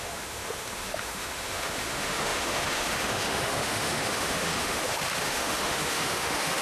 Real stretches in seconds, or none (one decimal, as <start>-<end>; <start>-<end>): none